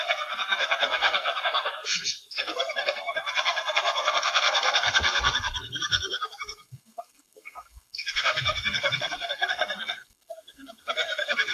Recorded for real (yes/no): no